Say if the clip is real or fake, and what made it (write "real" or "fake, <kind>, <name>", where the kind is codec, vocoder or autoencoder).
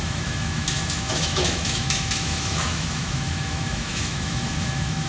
fake, autoencoder, DAC-VAE